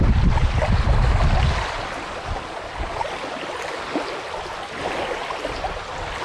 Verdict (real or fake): real